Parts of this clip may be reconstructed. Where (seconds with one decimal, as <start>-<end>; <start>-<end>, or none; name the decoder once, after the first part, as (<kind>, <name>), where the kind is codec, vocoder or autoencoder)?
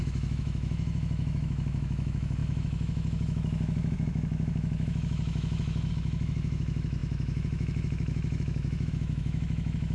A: 0.0-9.9 (autoencoder, DAC-VAE)